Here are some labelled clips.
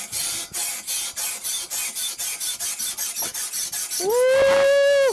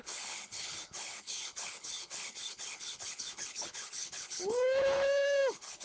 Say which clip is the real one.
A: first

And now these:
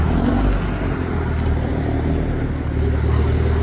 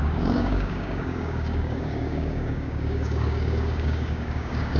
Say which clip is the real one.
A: first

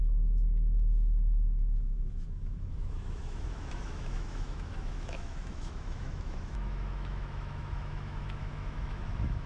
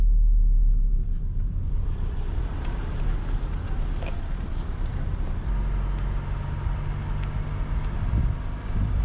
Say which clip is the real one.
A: second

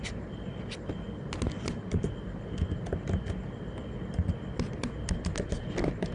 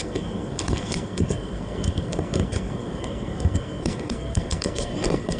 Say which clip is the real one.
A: first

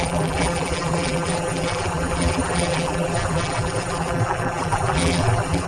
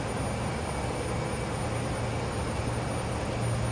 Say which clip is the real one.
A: second